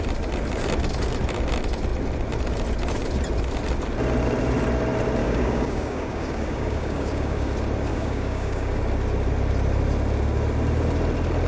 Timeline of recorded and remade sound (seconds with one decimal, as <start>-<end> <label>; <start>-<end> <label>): 0.0-5.2 recorded; 5.2-7.5 remade; 7.5-7.9 recorded; 7.9-8.8 remade; 8.8-11.5 recorded